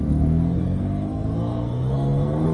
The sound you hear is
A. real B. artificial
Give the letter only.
B